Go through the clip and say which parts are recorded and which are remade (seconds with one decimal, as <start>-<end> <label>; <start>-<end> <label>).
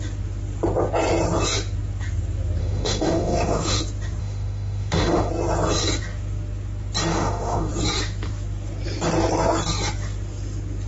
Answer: 0.0-2.6 recorded; 2.6-3.8 remade; 3.8-4.2 recorded; 4.2-5.3 remade; 5.3-7.1 recorded; 7.1-7.7 remade; 7.7-10.9 recorded